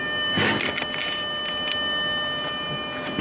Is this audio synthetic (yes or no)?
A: no